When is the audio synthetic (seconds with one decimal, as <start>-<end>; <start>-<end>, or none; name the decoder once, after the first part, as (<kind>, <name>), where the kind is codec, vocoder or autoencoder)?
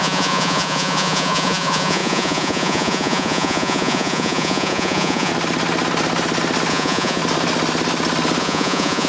0.0-5.3 (vocoder, Vocos); 6.7-7.2; 8.4-9.1